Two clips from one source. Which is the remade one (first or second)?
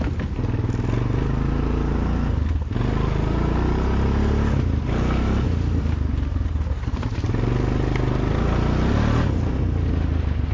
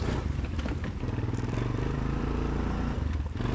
second